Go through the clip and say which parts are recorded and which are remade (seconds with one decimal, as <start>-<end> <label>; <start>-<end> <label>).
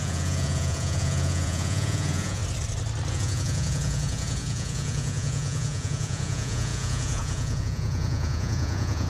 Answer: 0.0-2.4 remade; 2.4-3.1 recorded; 3.1-9.1 remade